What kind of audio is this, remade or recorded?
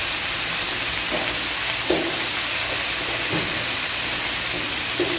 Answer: recorded